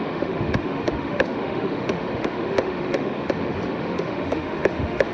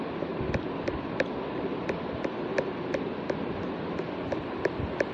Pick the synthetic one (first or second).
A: first